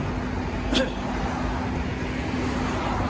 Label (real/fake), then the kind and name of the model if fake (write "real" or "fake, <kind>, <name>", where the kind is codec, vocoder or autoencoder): real